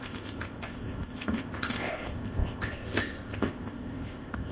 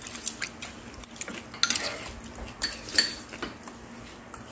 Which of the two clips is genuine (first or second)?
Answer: second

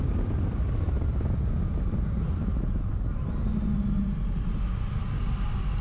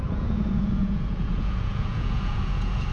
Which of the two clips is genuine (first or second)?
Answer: first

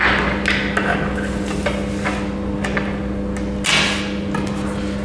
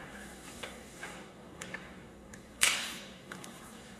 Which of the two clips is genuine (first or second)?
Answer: first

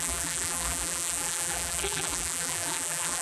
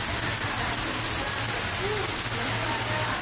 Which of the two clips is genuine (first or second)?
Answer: second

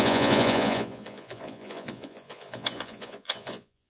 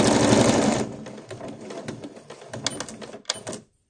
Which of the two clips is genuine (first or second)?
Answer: second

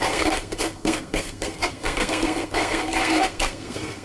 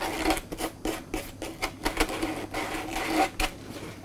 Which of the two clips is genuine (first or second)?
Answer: second